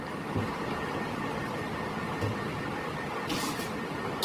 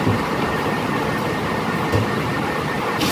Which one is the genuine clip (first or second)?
first